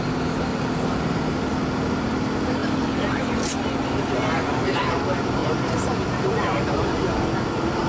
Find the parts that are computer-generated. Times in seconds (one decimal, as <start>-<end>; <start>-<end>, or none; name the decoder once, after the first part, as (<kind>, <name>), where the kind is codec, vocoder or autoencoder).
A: 0.5-1.2 (vocoder, BigVGAN v2); 5.4-7.1